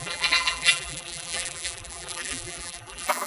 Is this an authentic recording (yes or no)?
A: no